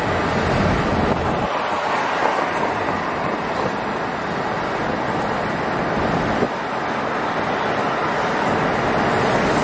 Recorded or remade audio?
recorded